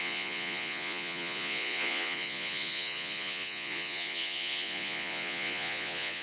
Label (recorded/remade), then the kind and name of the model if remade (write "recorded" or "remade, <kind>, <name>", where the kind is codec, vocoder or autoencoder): remade, vocoder, Vocos